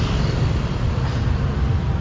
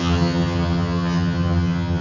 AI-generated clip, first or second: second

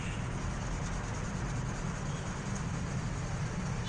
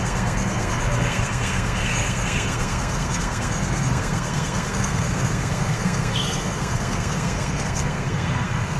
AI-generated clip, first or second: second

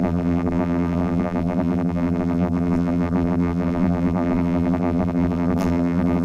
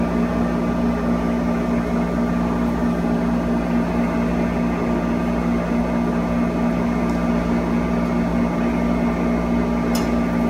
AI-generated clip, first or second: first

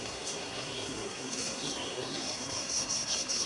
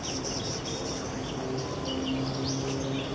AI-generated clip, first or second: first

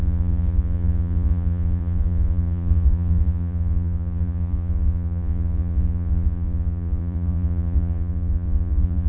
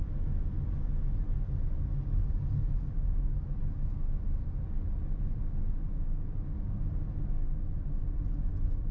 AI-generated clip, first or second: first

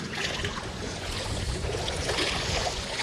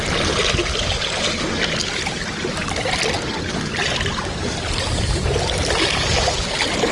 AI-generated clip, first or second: first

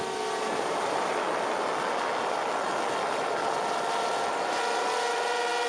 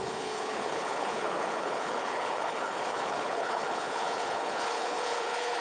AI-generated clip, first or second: second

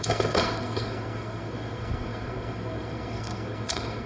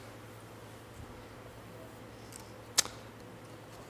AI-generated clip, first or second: first